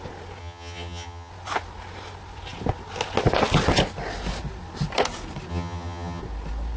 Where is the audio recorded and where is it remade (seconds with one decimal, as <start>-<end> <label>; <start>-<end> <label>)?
0.0-0.4 recorded; 0.4-1.3 remade; 1.3-5.5 recorded; 5.5-6.2 remade; 6.2-6.8 recorded